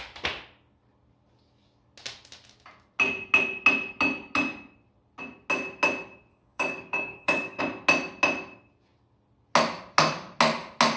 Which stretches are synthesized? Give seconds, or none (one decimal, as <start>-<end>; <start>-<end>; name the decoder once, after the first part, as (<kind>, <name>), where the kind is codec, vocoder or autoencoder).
6.3-7.6 (codec, DAC)